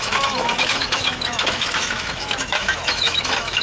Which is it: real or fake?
fake